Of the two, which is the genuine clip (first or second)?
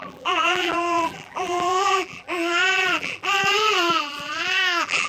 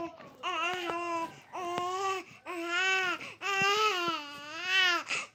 second